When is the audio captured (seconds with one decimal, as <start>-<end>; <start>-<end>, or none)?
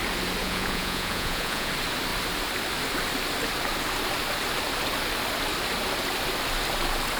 0.0-0.4; 1.7-7.2